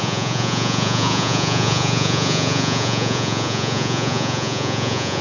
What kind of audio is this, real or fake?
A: fake